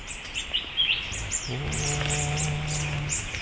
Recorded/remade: recorded